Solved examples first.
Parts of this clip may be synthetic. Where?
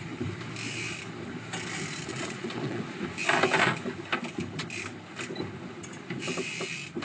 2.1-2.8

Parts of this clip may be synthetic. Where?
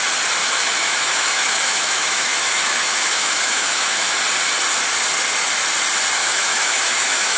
0.4-4.1; 6.2-7.4